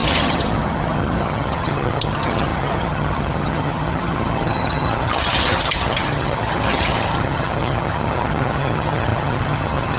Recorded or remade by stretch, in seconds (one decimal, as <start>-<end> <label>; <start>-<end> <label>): 0.0-10.0 remade